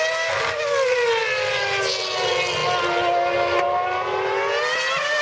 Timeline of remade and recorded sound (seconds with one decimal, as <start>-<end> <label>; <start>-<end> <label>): 0.0-5.2 recorded